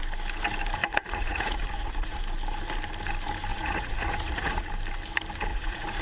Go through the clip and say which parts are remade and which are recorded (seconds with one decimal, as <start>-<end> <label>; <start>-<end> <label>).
0.0-0.8 recorded; 0.8-2.2 remade; 2.2-3.5 recorded; 3.5-4.7 remade; 4.7-5.5 recorded; 5.5-6.0 remade